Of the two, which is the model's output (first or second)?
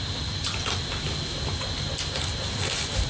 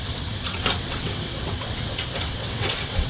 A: second